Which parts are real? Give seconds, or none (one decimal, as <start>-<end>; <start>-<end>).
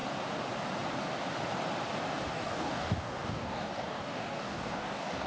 0.0-2.3